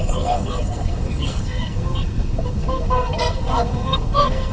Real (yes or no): no